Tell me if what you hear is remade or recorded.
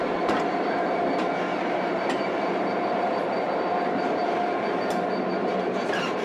remade